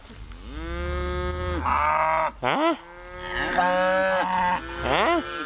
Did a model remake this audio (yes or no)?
no